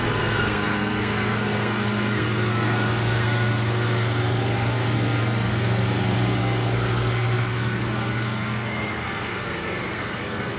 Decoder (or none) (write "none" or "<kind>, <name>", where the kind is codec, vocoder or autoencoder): codec, SNAC